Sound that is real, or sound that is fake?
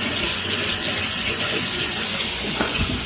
fake